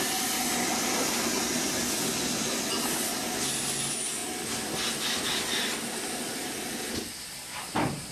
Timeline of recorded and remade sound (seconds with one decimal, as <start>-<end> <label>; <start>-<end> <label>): 0.0-8.1 recorded